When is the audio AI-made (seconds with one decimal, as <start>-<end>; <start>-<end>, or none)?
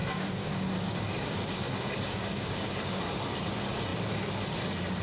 0.0-3.0